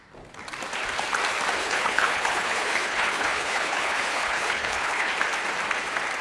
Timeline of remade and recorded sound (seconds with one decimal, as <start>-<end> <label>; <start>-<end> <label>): 0.0-1.6 recorded; 1.6-5.1 remade; 5.1-6.2 recorded